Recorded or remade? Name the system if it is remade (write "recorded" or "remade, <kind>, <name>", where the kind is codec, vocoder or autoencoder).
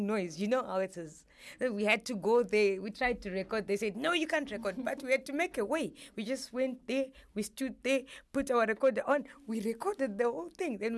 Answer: recorded